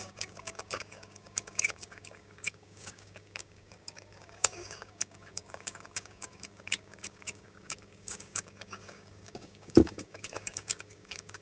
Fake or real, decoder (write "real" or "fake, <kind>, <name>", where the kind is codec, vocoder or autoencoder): fake, codec, DAC